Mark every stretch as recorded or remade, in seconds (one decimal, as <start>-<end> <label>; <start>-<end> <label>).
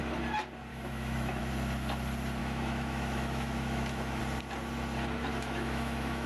0.0-0.7 recorded; 0.7-1.4 remade; 1.4-2.4 recorded; 2.4-4.2 remade; 4.2-5.3 recorded; 5.3-6.3 remade